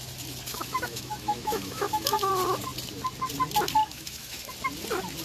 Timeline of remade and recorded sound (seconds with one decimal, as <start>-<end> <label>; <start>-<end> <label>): 0.0-0.5 recorded; 0.5-2.3 remade; 2.3-3.8 recorded; 3.8-4.5 remade; 4.5-5.2 recorded